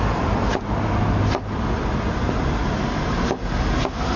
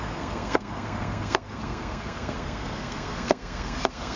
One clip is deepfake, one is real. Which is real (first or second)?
first